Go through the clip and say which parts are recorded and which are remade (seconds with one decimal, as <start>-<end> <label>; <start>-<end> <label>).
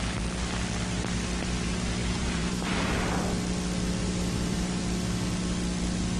0.0-2.0 recorded; 2.0-2.9 remade; 2.9-4.0 recorded; 4.0-4.8 remade; 4.8-6.2 recorded